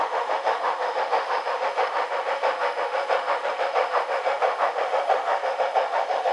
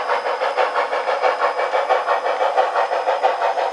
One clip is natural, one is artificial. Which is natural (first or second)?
second